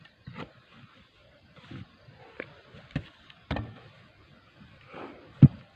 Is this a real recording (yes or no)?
yes